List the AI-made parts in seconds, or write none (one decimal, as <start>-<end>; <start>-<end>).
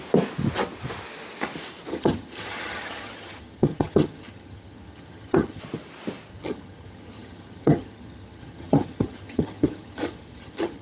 1.9-5.6; 6.3-10.8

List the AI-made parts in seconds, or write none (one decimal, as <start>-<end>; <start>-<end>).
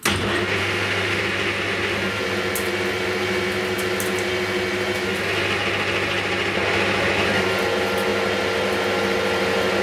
0.6-1.2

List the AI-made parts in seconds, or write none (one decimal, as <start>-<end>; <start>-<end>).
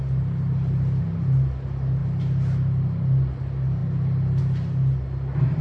none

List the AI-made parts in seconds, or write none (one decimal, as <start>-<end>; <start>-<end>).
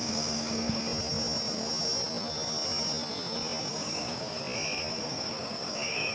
0.0-0.8; 3.7-4.4; 4.9-6.1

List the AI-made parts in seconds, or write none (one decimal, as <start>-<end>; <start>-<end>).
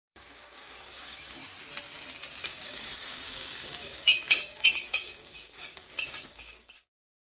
0.0-1.4; 2.4-7.3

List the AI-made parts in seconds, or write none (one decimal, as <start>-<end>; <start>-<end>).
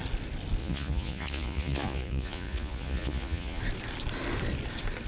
0.6-3.6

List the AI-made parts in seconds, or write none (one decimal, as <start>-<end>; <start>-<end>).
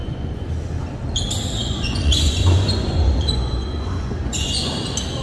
0.0-0.5; 1.6-4.7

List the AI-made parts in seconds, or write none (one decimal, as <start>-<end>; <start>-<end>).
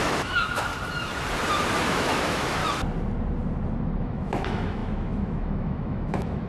0.0-0.7; 1.8-2.6; 4.0-6.5